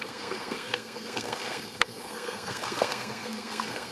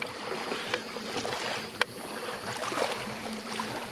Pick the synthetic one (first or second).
first